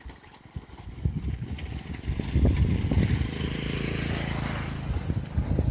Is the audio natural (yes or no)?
yes